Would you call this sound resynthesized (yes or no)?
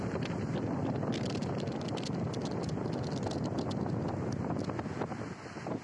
no